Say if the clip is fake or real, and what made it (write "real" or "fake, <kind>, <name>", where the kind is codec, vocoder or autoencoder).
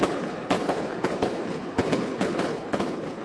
fake, codec, HILCodec